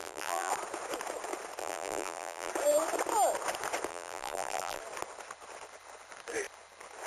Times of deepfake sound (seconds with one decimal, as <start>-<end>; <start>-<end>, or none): 0.0-0.5; 1.6-2.5; 3.9-4.8